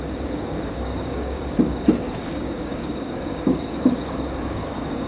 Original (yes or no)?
no